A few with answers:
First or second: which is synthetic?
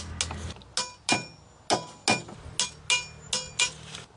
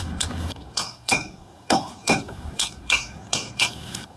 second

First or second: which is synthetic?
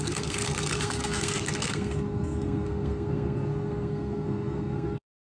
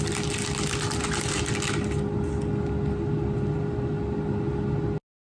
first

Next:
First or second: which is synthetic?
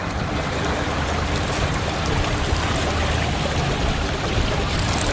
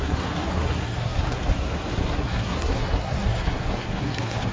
second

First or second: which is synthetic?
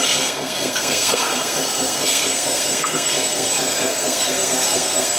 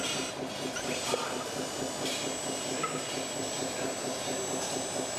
first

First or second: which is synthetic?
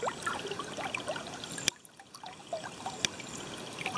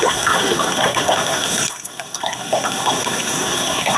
second